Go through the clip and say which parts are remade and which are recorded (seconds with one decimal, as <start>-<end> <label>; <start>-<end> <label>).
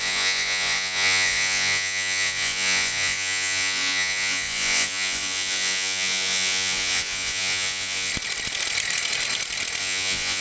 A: 0.0-8.1 remade; 8.1-9.8 recorded; 9.8-10.4 remade